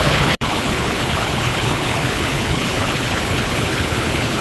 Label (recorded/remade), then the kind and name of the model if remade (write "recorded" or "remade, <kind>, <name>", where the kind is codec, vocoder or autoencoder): remade, codec, HILCodec